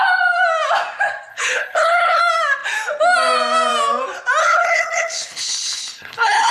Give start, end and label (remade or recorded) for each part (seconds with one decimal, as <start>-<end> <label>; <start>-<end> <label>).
0.0-1.3 recorded; 1.3-2.2 remade; 2.2-4.4 recorded; 4.4-6.5 remade

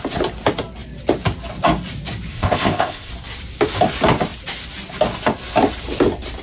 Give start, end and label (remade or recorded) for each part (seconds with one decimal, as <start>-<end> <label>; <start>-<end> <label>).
0.0-2.3 recorded; 2.3-3.1 remade; 3.1-6.4 recorded

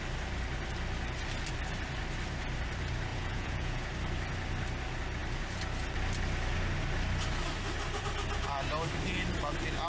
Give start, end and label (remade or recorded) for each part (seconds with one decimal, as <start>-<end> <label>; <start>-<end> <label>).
0.0-3.1 recorded; 3.1-3.9 remade; 3.9-9.9 recorded

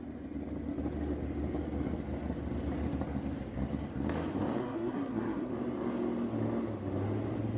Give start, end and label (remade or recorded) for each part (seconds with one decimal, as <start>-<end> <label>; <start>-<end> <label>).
0.0-4.6 recorded; 4.6-5.5 remade; 5.5-7.6 recorded

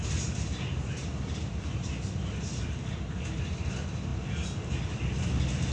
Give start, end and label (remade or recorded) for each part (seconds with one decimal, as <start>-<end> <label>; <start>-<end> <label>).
0.0-1.0 recorded; 1.0-2.9 remade; 2.9-4.1 recorded; 4.1-5.0 remade; 5.0-5.7 recorded

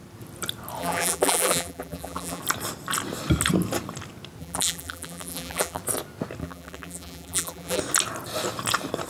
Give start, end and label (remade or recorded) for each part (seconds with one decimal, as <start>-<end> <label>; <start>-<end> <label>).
0.0-0.8 recorded; 0.8-2.4 remade; 2.4-4.4 recorded; 4.4-5.8 remade; 5.8-6.4 recorded; 6.4-7.8 remade; 7.8-9.1 recorded

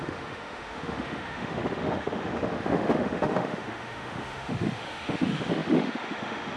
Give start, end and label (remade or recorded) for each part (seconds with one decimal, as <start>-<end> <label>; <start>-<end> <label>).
0.0-6.6 remade